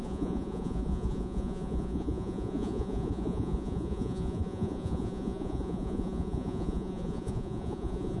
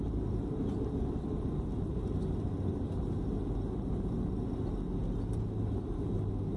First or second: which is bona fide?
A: second